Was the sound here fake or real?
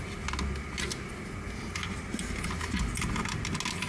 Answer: real